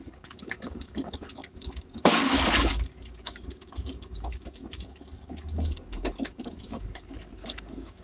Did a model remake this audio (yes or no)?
yes